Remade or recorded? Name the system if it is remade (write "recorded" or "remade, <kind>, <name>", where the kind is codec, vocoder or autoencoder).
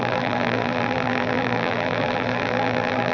remade, vocoder, BigVGAN v2